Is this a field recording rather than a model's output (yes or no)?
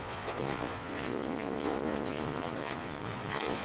no